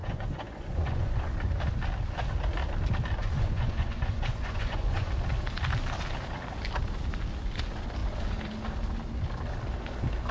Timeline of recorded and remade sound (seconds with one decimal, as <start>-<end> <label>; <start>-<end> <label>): 0.0-1.3 remade; 1.3-3.2 recorded; 3.2-5.1 remade; 5.1-10.3 recorded